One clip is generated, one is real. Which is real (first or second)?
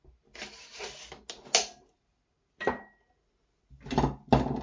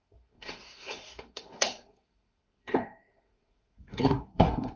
first